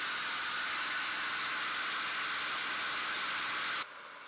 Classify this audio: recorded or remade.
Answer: recorded